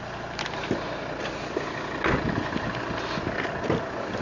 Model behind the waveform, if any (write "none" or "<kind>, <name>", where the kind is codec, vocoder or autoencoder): none